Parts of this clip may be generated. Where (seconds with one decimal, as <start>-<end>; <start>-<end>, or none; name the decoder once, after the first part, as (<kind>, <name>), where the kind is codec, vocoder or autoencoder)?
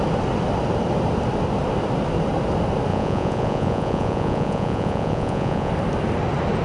2.9-5.7 (vocoder, Vocos)